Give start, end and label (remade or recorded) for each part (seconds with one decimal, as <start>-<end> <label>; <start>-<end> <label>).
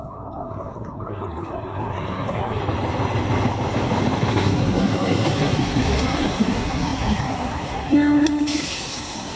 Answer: 0.0-2.6 remade; 2.6-4.3 recorded; 4.3-9.4 remade